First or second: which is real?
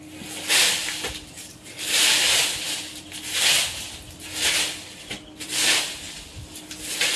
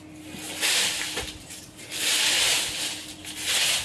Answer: second